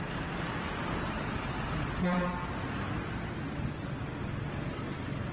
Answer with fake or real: real